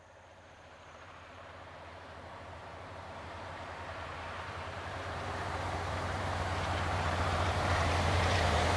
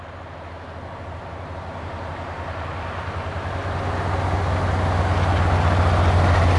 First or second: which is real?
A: second